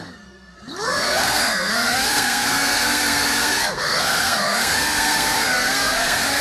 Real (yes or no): no